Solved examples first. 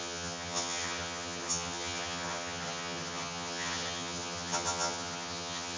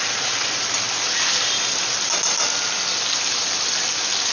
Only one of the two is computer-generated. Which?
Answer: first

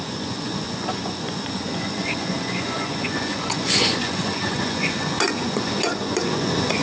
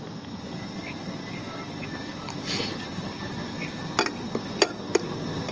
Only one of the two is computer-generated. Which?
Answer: first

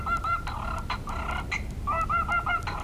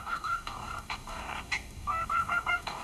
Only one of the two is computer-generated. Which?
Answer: second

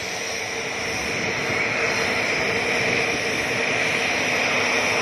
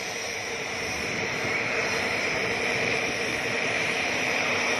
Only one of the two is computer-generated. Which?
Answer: second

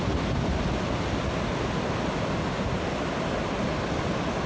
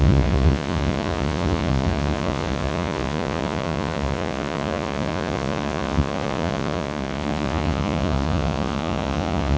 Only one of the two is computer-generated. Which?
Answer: second